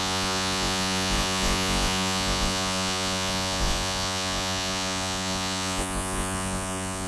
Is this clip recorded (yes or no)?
no